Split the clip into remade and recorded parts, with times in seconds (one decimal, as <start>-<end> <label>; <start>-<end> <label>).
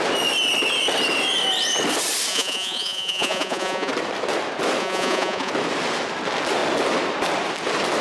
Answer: 0.0-2.3 recorded; 2.3-3.9 remade; 3.9-4.8 recorded; 4.8-5.5 remade; 5.5-8.0 recorded